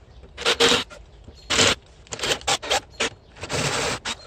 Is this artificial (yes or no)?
no